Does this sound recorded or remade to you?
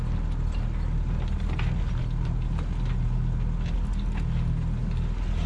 recorded